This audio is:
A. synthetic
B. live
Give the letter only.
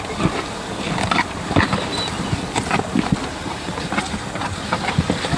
B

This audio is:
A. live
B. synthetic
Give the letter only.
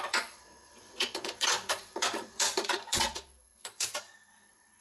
B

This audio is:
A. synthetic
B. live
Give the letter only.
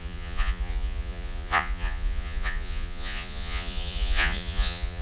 A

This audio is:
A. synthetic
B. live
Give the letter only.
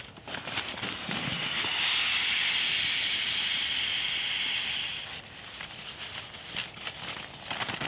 B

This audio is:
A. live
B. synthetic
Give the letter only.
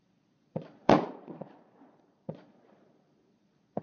B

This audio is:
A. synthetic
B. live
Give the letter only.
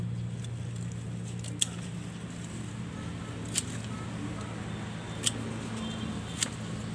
B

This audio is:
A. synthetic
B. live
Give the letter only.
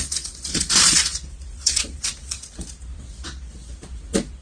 A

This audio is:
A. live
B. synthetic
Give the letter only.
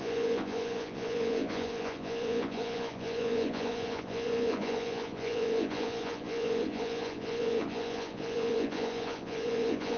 B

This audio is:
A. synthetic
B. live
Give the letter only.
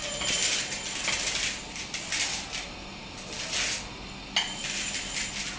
B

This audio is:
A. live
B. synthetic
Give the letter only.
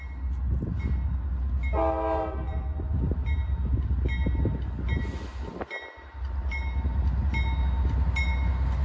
A